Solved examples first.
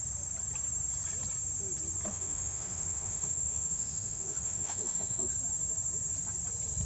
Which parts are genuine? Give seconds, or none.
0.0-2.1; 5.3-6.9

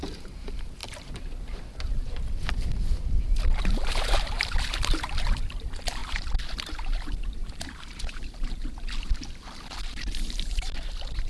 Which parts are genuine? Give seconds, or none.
none

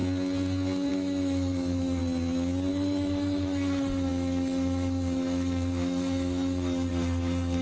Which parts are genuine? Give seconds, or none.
0.0-0.9; 2.0-2.7

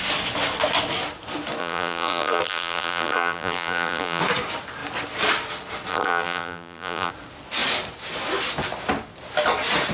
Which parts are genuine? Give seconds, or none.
0.0-1.6; 4.2-5.9; 7.1-9.9

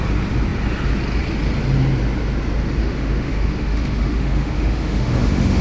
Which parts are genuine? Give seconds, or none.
0.0-2.8